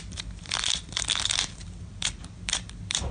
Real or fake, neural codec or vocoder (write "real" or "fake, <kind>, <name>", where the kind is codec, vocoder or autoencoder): fake, vocoder, BigVGAN v2